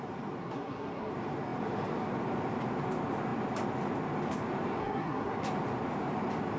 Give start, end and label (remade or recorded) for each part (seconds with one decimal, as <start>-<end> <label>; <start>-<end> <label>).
0.0-0.4 recorded; 0.4-1.1 remade; 1.1-4.8 recorded; 4.8-5.5 remade; 5.5-6.6 recorded